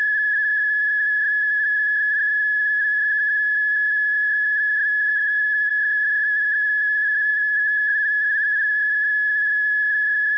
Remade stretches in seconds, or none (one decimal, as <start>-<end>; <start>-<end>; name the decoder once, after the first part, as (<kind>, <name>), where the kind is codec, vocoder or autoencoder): 5.1-5.7 (codec, DAC); 7.3-7.9